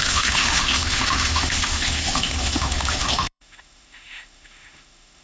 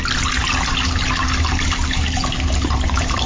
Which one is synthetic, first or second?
first